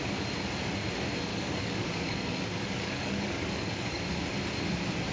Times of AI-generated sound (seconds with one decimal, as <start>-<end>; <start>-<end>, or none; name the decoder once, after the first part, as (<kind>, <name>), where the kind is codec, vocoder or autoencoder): 1.3-4.0 (codec, DAC)